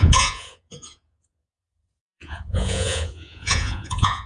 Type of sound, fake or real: fake